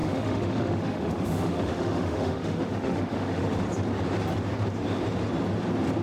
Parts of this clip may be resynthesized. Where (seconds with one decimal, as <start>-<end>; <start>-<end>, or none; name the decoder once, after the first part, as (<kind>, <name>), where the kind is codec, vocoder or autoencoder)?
0.0-3.6 (autoencoder, DAC-VAE)